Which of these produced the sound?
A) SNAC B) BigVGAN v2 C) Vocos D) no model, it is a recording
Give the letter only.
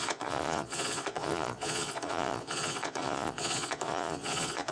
C